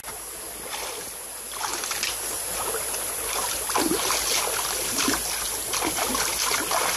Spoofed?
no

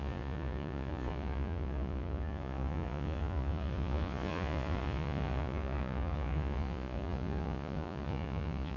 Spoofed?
yes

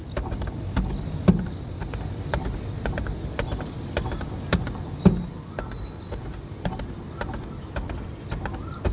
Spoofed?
no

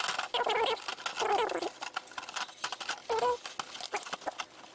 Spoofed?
no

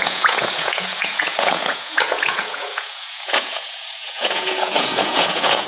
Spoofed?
yes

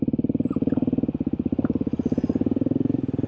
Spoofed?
yes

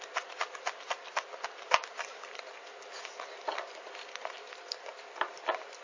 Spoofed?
no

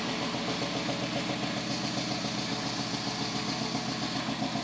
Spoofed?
no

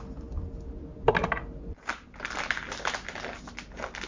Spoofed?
no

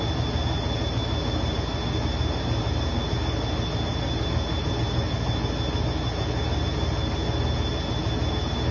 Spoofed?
no